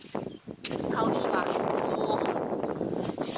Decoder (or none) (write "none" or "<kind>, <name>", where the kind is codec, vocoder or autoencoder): none